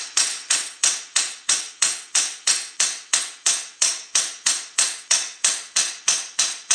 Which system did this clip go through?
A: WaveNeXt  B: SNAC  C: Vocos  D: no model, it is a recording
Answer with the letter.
A